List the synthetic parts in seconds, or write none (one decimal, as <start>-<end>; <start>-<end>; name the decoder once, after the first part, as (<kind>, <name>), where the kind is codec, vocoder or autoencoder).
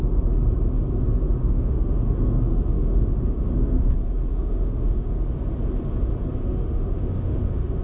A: 1.4-3.9 (autoencoder, DAC-VAE); 4.3-5.1; 6.4-7.8